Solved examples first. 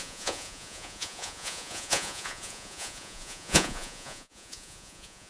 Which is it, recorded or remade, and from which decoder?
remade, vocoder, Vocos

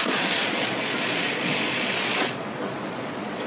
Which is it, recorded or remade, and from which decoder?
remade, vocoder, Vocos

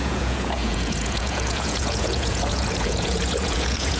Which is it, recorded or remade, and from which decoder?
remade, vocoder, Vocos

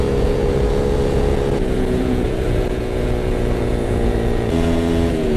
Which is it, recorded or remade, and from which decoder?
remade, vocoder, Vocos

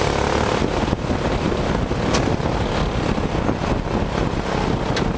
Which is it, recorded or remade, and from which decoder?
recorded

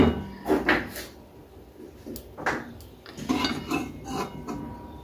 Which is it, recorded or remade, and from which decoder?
recorded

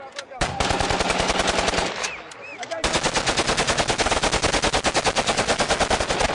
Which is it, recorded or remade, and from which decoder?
recorded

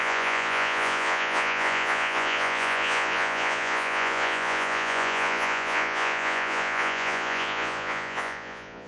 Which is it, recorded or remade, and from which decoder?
remade, vocoder, Vocos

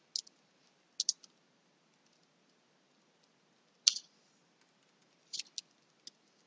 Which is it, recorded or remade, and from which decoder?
recorded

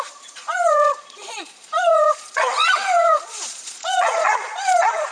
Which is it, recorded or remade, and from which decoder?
remade, vocoder, Vocos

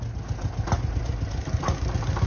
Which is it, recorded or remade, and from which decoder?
recorded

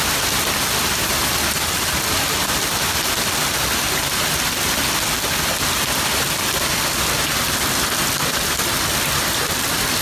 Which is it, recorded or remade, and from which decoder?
recorded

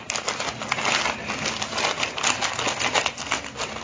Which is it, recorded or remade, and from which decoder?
recorded